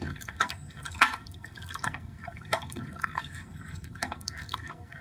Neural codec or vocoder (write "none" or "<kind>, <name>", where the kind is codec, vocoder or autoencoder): codec, SNAC